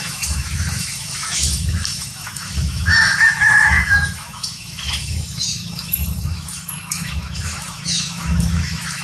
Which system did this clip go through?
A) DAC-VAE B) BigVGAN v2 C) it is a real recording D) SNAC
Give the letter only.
A